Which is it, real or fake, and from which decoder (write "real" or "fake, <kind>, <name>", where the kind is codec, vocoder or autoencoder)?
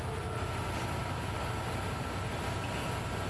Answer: real